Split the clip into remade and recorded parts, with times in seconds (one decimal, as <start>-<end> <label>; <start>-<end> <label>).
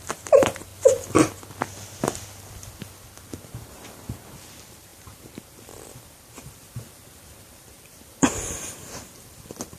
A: 0.0-0.7 remade; 0.7-3.4 recorded; 3.4-9.8 remade